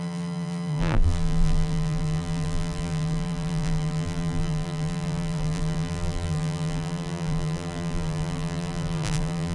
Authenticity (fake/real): fake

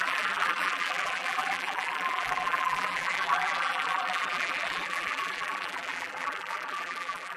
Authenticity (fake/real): fake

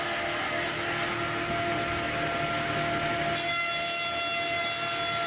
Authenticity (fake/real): real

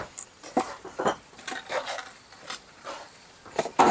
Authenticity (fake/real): fake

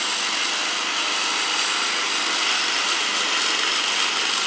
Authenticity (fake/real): real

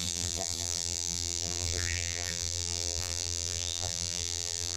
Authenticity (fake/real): fake